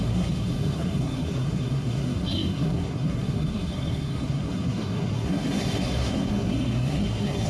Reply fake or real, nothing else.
fake